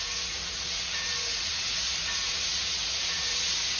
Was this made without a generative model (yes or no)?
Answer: no